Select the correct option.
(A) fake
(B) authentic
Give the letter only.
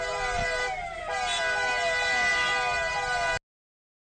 B